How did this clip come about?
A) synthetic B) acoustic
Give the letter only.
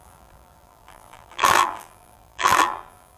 A